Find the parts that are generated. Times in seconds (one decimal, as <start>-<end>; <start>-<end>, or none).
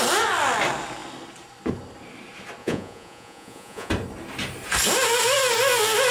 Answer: 2.6-3.9